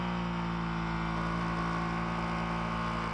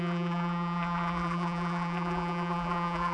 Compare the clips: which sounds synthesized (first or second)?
second